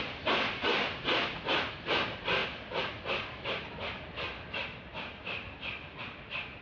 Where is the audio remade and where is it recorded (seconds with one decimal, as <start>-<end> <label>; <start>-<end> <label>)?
0.0-6.6 recorded

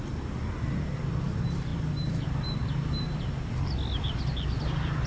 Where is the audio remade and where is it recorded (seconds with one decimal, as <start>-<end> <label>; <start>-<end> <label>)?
0.0-5.1 recorded